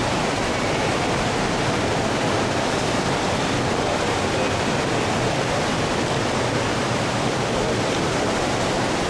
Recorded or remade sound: remade